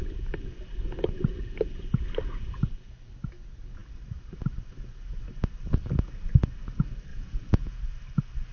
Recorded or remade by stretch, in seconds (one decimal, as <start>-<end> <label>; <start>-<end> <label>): 0.0-7.1 recorded; 7.1-7.8 remade; 7.8-8.5 recorded